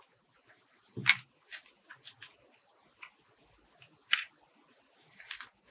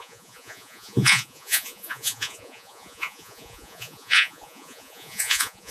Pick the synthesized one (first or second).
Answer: second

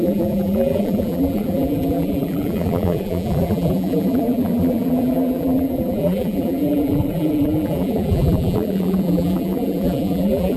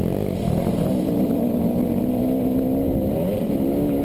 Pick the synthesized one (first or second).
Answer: first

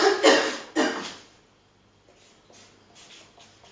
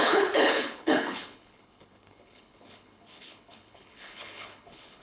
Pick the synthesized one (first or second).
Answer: second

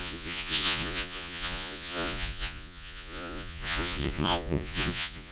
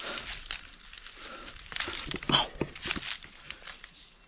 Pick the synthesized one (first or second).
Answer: first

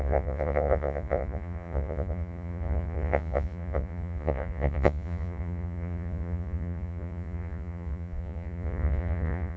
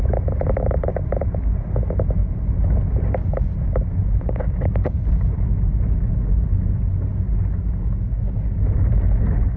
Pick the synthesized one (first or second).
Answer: first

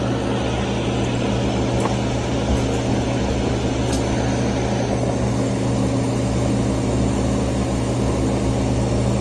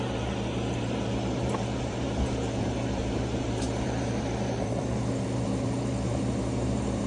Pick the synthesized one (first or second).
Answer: second